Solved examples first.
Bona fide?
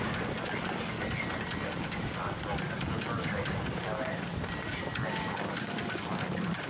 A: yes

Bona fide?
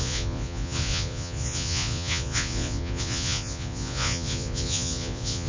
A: no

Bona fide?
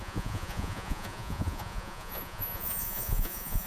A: no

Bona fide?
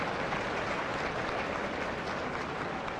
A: yes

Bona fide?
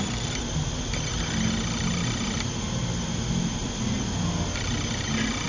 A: yes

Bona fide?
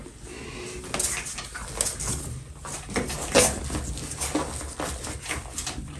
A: yes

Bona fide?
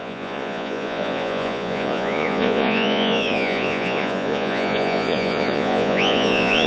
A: no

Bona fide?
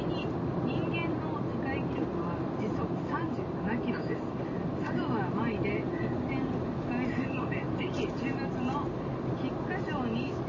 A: yes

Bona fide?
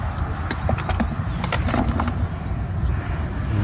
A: yes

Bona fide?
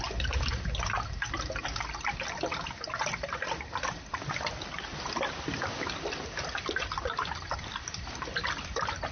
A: yes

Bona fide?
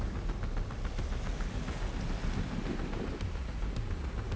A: yes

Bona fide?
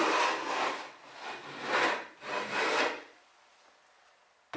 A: yes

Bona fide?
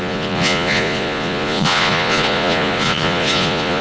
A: no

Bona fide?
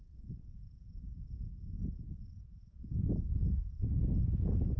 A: no